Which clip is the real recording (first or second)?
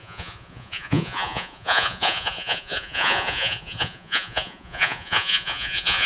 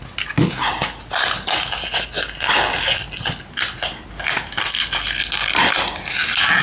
second